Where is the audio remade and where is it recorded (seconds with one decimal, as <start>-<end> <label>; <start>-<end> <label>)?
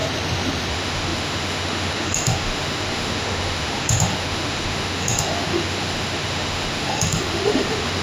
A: 0.0-0.7 recorded; 0.7-8.0 remade